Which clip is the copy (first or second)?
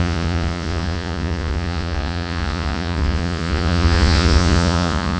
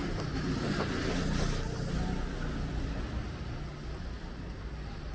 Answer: first